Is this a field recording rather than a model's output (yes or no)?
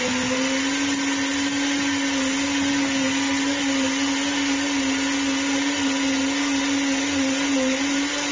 yes